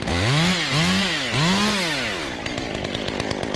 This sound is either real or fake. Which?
real